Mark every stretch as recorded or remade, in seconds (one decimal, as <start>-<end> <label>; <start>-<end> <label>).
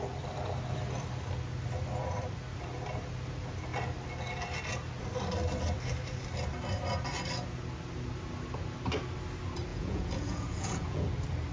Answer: 0.0-9.7 recorded; 9.7-11.1 remade; 11.1-11.5 recorded